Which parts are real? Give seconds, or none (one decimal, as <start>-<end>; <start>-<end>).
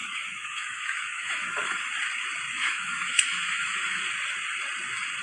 1.9-2.5; 4.0-5.2